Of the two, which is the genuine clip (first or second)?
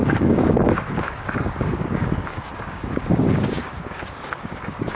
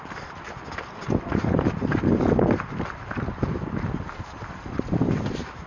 second